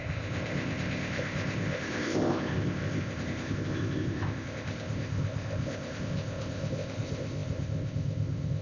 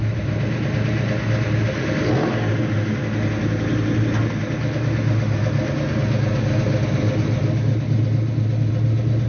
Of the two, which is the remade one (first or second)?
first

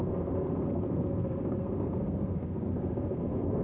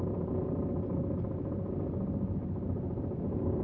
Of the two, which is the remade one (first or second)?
first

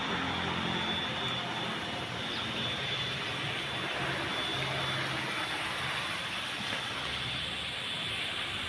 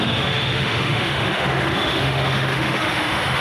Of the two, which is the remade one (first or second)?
second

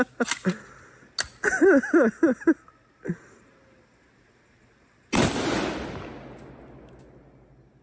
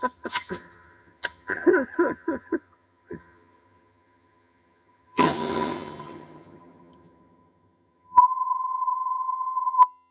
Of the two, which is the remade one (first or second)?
second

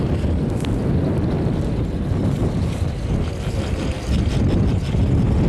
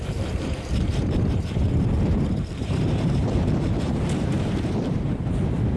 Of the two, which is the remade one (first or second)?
second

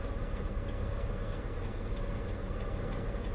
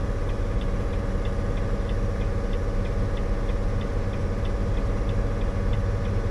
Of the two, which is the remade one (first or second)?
first